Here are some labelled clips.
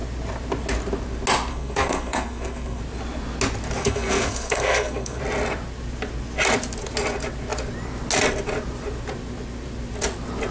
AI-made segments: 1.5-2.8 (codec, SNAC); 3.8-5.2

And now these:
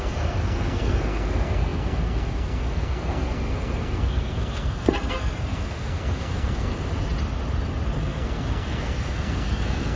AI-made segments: 0.0-6.7 (codec, SNAC); 8.0-10.0

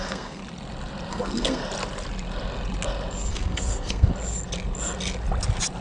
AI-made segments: 0.0-0.4 (codec, SNAC); 1.1-1.6; 3.3-4.1

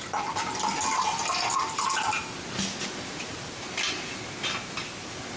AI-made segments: none

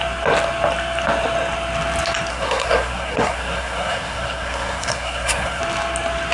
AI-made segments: 2.3-5.6 (codec, SNAC)